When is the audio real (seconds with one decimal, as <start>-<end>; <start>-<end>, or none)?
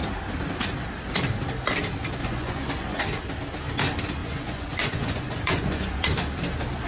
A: 0.0-2.2; 3.0-4.2; 6.0-6.9